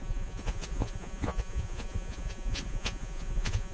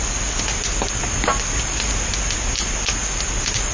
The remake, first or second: first